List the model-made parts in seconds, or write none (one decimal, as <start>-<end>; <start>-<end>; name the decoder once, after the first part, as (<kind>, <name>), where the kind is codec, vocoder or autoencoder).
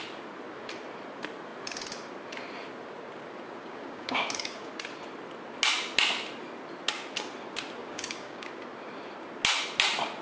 3.6-4.7 (codec, DAC); 7.8-8.5